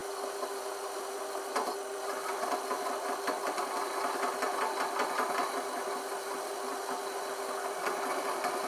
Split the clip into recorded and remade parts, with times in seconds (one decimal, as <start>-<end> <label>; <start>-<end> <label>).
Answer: 0.0-8.7 recorded